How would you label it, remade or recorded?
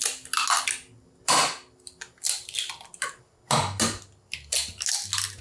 recorded